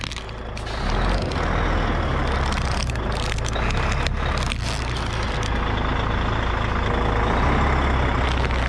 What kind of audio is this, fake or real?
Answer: real